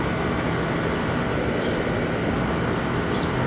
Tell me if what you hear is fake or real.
real